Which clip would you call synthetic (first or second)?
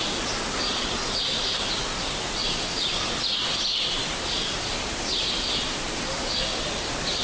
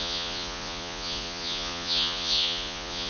second